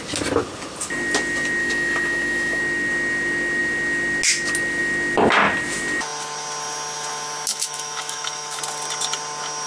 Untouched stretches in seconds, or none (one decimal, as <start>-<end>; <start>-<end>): 0.0-1.6; 2.6-7.5; 8.6-9.7